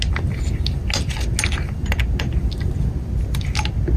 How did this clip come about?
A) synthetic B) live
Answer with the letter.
B